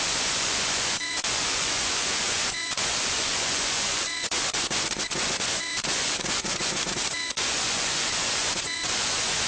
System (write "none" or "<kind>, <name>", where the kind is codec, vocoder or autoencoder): vocoder, Vocos